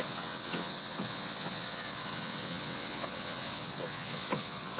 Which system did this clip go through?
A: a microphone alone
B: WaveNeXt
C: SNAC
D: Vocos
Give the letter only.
B